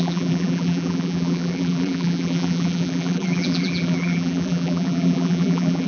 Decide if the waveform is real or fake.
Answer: fake